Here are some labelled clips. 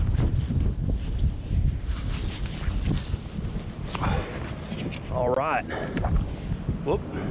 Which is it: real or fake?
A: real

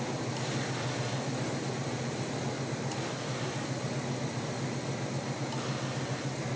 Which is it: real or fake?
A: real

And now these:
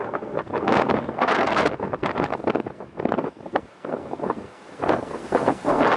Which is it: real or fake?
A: fake